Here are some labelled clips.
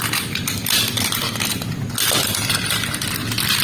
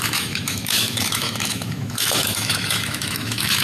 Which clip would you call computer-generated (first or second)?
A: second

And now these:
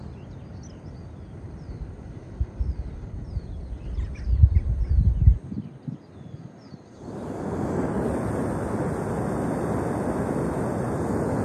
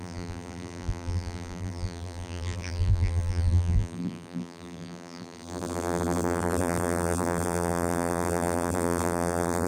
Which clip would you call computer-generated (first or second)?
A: second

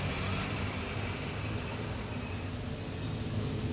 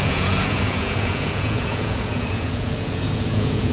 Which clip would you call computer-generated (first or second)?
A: second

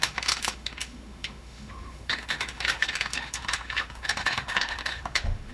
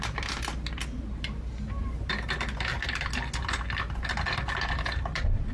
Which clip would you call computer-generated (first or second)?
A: first